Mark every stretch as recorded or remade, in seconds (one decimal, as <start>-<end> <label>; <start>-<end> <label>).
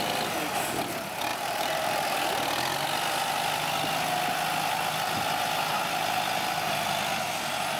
0.0-1.3 recorded; 1.3-2.3 remade; 2.3-7.8 recorded